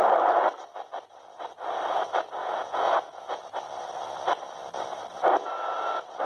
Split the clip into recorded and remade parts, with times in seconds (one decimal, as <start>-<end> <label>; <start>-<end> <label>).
0.0-2.4 recorded; 2.4-3.4 remade; 3.4-6.2 recorded